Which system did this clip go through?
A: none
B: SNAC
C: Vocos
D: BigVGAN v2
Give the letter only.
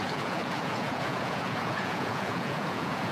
C